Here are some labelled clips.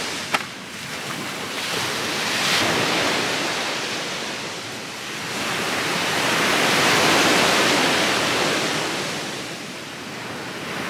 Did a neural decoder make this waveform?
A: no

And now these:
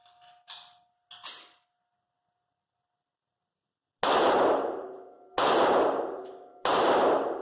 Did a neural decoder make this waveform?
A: no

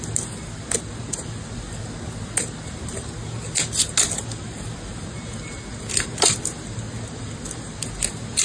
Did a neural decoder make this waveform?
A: no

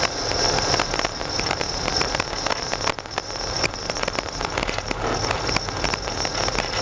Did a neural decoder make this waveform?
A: no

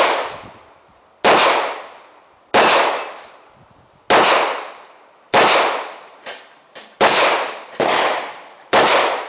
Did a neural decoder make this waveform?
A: no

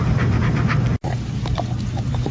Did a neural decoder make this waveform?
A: no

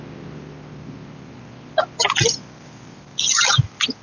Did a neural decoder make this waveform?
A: no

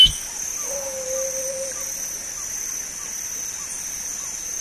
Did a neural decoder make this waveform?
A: no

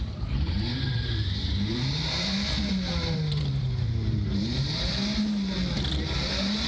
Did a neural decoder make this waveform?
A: yes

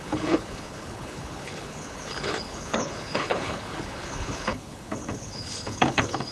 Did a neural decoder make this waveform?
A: yes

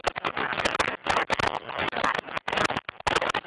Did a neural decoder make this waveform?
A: no